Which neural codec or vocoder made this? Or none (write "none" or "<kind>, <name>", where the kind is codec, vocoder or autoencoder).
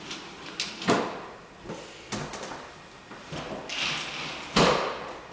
none